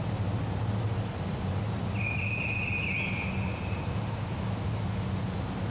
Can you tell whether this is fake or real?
real